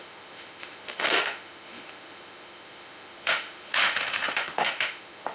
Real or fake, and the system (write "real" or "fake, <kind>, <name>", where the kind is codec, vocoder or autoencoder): fake, autoencoder, DAC-VAE